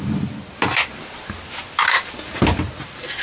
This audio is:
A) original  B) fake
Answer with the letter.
A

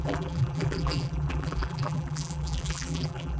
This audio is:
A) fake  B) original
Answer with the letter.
A